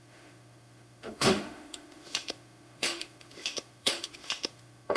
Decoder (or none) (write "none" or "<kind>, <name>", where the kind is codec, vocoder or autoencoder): autoencoder, DAC-VAE